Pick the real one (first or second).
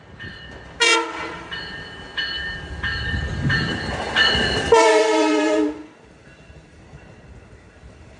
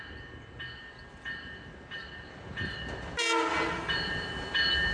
second